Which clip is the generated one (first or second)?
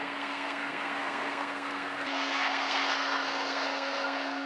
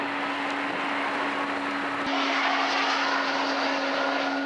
first